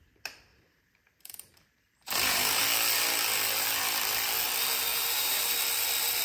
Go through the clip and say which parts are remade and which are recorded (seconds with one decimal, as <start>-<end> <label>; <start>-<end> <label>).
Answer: 0.0-0.5 recorded; 0.5-2.6 remade; 2.6-4.9 recorded; 4.9-5.4 remade; 5.4-6.2 recorded